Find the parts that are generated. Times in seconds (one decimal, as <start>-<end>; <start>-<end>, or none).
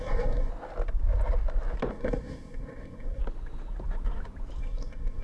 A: 0.0-0.5; 1.9-3.2; 4.6-5.2